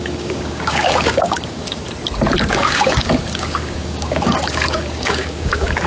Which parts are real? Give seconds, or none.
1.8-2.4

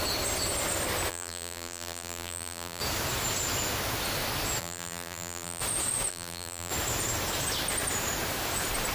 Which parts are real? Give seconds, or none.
0.0-1.1; 2.8-4.6; 5.6-6.1; 6.7-8.9

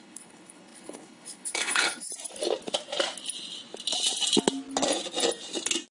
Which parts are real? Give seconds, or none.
2.1-5.9